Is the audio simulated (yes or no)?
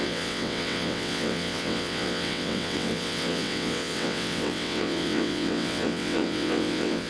yes